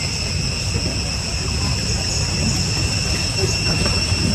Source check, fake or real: real